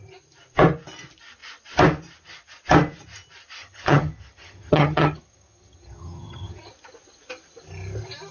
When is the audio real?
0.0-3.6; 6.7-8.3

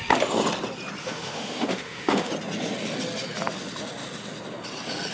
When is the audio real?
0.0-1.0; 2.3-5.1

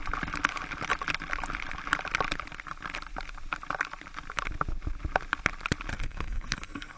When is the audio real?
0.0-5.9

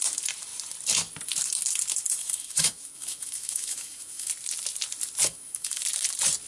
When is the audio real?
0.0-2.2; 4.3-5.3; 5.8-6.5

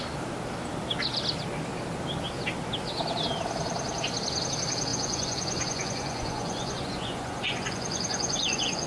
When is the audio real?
0.0-4.9